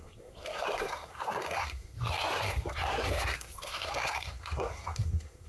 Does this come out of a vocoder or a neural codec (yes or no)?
yes